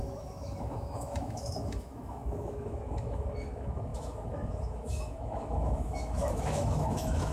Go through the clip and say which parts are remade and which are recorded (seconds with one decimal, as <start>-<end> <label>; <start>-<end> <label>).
0.0-7.3 remade